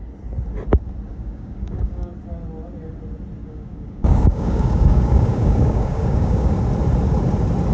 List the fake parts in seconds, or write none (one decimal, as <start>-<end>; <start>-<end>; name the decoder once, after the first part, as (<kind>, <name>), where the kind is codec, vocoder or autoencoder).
1.1-2.1 (codec, DAC); 3.4-6.5